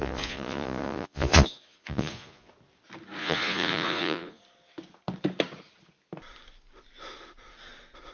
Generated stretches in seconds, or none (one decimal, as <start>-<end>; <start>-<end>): 0.0-2.5; 3.2-4.4